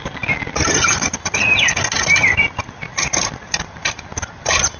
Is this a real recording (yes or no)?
yes